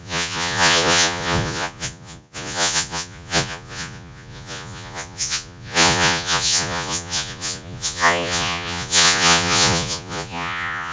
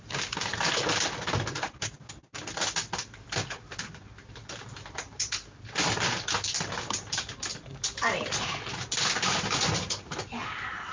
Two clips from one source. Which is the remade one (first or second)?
first